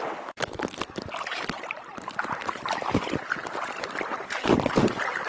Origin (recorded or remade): recorded